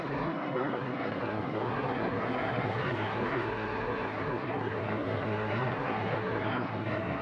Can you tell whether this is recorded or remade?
remade